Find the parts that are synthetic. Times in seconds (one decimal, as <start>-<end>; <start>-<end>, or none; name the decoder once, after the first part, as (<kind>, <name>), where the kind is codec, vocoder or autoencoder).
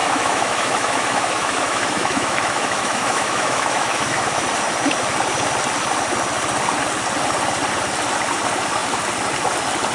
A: 0.0-4.4 (autoencoder, DAC-VAE)